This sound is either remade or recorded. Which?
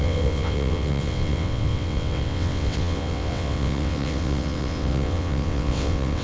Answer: remade